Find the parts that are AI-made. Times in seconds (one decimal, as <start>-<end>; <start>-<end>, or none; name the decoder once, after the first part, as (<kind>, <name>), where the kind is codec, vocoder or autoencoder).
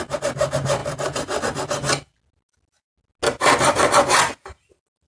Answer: none